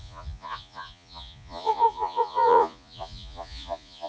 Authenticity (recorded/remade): remade